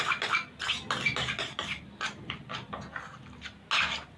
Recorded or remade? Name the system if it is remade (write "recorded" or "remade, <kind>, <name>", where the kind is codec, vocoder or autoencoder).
recorded